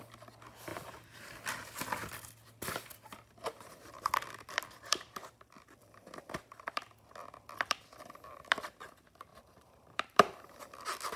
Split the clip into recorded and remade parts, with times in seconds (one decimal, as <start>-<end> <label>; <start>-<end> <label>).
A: 0.0-0.7 recorded; 0.7-1.2 remade; 1.2-9.3 recorded; 9.3-10.6 remade; 10.6-11.2 recorded